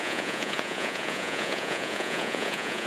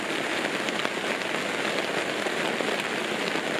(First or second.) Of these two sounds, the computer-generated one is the first